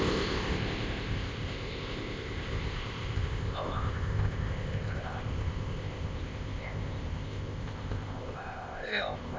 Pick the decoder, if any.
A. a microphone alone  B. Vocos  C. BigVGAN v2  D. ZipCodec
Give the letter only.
D